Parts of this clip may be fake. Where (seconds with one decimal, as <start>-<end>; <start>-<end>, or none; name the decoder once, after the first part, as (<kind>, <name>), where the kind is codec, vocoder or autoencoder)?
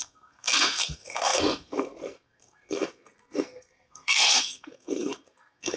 0.0-5.8 (codec, SNAC)